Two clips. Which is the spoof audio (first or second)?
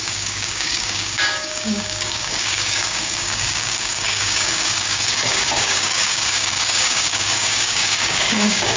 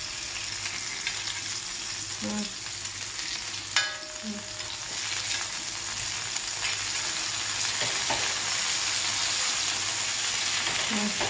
first